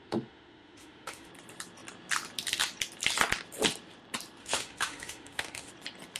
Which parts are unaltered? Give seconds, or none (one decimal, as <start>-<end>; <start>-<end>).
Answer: 1.3-4.4; 5.7-6.2